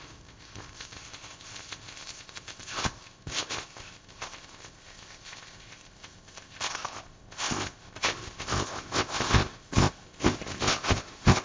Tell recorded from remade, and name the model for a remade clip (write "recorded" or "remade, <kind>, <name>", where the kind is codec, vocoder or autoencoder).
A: remade, codec, ZipCodec